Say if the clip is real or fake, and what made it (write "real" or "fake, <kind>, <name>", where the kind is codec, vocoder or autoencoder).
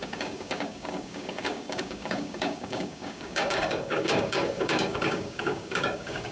fake, codec, DAC